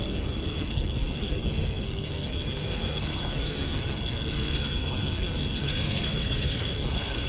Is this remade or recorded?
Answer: remade